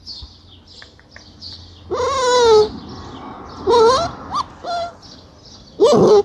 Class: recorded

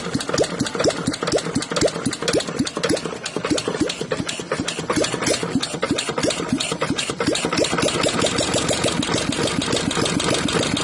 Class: recorded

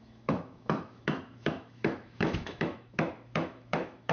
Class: remade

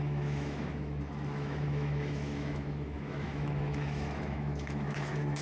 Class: remade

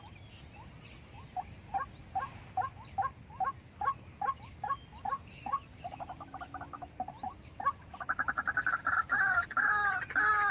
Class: recorded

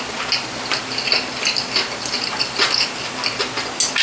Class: recorded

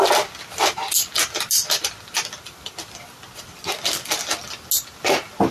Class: recorded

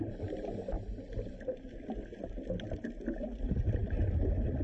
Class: recorded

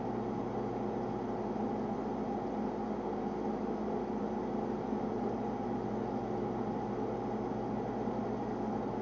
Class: recorded